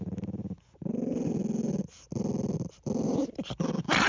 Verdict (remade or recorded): recorded